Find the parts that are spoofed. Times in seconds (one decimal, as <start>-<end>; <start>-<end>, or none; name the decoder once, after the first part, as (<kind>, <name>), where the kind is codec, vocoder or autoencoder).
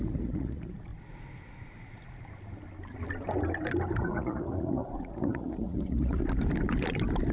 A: 0.0-0.9 (vocoder, Vocos); 4.0-6.2